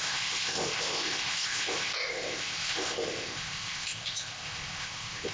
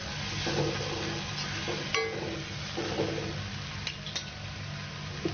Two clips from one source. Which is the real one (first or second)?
second